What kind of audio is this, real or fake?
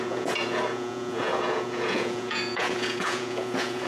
fake